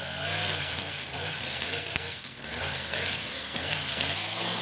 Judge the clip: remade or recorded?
remade